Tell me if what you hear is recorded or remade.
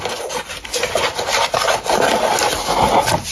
recorded